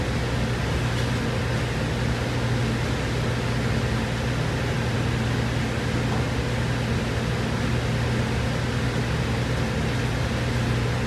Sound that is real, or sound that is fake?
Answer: real